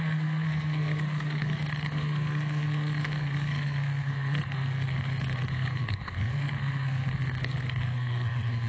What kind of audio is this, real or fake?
fake